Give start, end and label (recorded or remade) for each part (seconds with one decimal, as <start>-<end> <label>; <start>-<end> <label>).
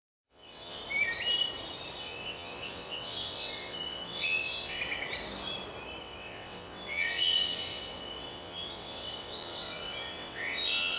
0.0-0.8 remade; 0.8-2.0 recorded; 2.0-4.8 remade; 4.8-6.0 recorded; 6.0-11.0 remade